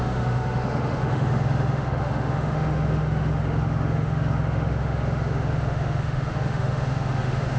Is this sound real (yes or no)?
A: no